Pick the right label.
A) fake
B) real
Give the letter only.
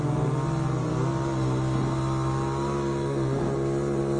B